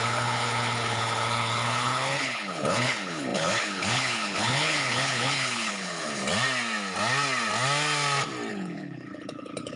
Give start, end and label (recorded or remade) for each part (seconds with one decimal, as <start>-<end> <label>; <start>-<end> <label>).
0.0-6.2 remade; 6.2-8.5 recorded; 8.5-9.8 remade